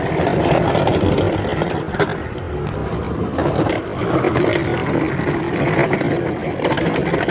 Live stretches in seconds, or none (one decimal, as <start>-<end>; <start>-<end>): 0.0-7.3